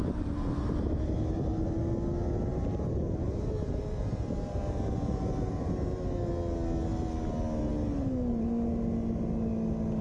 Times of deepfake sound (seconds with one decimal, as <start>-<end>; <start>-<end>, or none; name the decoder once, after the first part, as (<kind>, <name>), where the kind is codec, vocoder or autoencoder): 0.0-1.8 (vocoder, BigVGAN v2); 2.5-6.3